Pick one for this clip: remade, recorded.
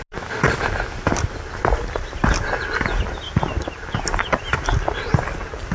recorded